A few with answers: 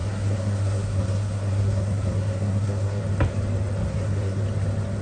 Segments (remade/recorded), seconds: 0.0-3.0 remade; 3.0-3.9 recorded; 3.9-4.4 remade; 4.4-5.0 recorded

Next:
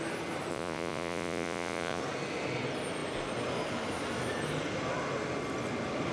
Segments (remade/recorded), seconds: 0.0-0.5 recorded; 0.5-2.0 remade; 2.0-6.1 recorded

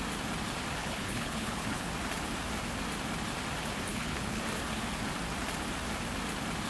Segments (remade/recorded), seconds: 0.0-0.8 recorded; 0.8-1.9 remade; 1.9-3.9 recorded; 3.9-4.4 remade; 4.4-6.7 recorded

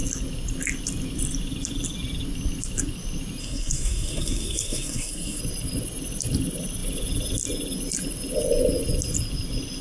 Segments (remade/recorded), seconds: 0.0-3.4 recorded; 3.4-5.4 remade; 5.4-9.8 recorded

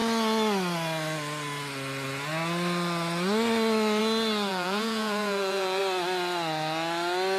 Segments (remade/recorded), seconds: 0.0-4.5 recorded; 4.5-5.8 remade; 5.8-7.4 recorded

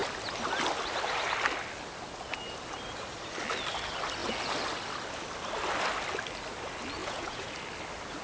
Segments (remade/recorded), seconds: 0.0-7.0 recorded; 7.0-7.5 remade; 7.5-8.2 recorded

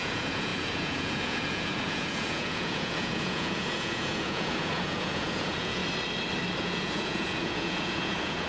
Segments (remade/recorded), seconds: 0.0-5.8 remade; 5.8-6.6 recorded; 6.6-8.5 remade